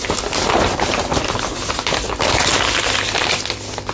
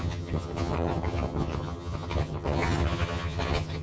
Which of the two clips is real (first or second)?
first